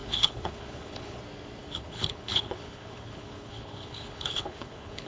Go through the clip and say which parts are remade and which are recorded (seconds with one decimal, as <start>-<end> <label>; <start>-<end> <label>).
0.0-1.2 remade; 1.2-1.6 recorded; 1.6-5.1 remade